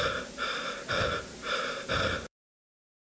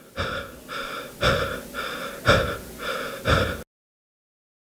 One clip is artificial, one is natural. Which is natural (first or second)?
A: second